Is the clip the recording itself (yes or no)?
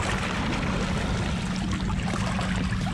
yes